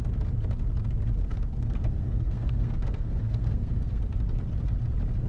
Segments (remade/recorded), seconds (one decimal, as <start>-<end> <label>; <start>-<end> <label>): 0.0-1.2 recorded; 1.2-4.0 remade; 4.0-5.3 recorded